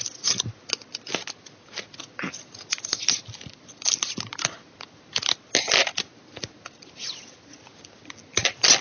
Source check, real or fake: real